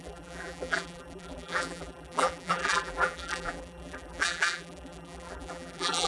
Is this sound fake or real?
fake